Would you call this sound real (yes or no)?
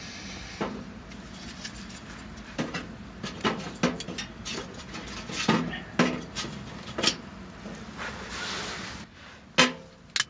yes